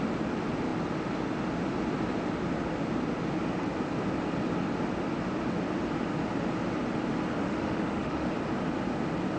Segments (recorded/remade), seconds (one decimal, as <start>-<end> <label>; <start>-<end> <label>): 0.0-7.4 recorded; 7.4-8.3 remade; 8.3-9.4 recorded

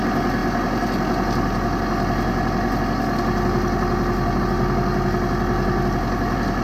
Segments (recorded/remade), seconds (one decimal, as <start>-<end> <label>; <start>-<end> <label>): 0.0-6.6 recorded